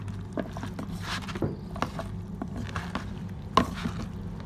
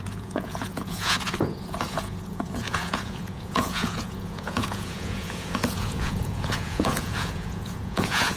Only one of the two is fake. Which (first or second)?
second